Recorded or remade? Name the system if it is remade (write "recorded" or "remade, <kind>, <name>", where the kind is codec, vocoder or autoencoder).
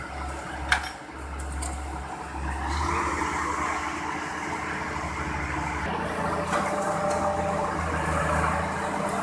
recorded